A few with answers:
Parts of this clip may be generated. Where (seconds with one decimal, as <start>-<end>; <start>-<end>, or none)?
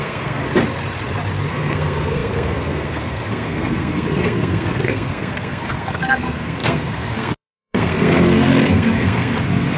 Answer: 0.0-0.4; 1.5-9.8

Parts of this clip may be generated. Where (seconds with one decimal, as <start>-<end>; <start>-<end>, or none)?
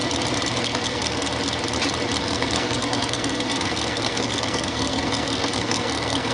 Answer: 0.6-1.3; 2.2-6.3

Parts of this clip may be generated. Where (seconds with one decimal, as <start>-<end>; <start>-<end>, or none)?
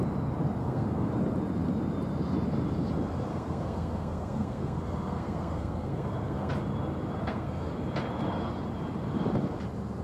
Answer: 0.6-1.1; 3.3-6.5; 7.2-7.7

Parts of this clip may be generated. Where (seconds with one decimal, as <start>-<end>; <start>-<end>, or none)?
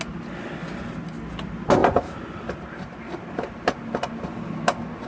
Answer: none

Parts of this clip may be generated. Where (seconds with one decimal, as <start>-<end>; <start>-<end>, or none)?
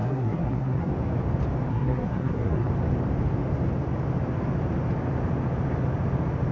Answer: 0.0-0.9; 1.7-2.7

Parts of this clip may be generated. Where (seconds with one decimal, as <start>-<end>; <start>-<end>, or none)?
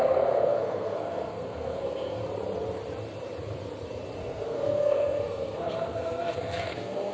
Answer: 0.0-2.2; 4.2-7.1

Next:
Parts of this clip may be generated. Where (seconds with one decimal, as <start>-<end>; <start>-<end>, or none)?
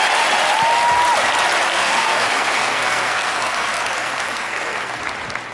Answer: 1.7-5.0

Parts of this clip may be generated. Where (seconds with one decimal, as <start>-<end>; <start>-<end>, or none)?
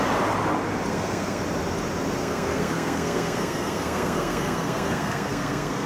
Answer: 0.9-1.4; 2.2-5.9